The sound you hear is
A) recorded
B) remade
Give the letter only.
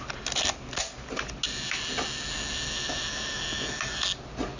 A